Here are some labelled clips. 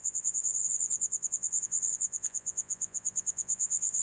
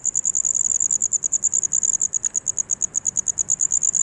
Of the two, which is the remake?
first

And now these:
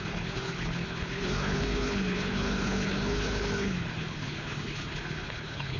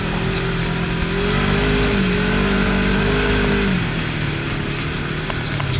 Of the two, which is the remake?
first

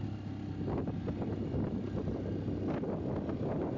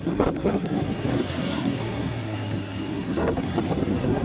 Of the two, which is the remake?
second